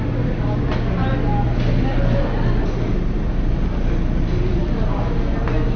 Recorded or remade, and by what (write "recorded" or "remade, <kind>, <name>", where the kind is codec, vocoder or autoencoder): recorded